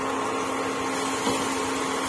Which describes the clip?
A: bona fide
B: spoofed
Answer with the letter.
A